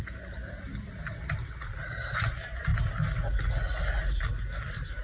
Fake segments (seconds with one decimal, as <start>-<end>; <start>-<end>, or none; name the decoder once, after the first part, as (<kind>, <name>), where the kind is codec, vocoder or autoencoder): none